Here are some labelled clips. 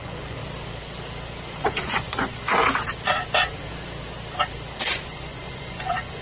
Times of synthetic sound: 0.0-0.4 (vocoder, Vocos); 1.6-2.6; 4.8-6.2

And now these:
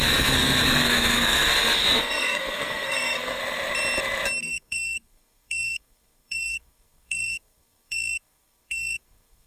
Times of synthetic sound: 0.0-3.4 (codec, SNAC); 4.4-9.5

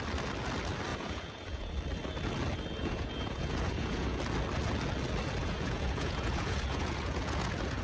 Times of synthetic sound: 0.9-1.7 (vocoder, Vocos); 2.8-4.2; 5.4-7.8